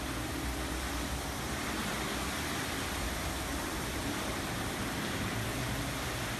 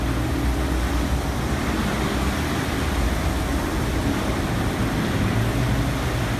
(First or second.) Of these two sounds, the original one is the second